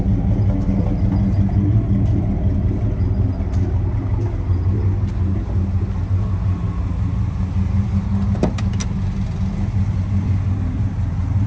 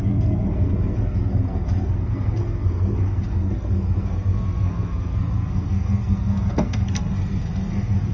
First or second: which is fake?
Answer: second